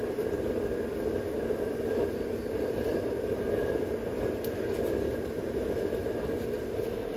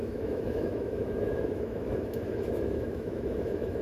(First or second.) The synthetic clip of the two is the second